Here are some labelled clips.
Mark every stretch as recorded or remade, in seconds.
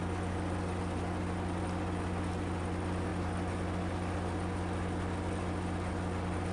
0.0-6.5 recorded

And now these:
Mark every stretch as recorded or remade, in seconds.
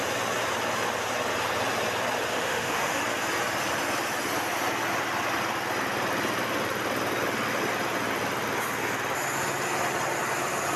0.0-2.3 recorded; 2.3-3.0 remade; 3.0-10.8 recorded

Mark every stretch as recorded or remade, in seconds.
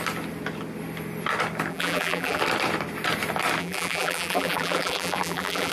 0.0-1.7 recorded; 1.7-2.4 remade; 2.4-3.6 recorded; 3.6-5.7 remade